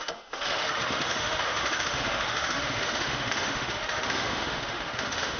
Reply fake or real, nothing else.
fake